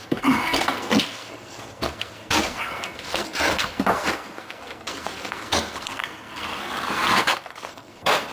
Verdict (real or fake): fake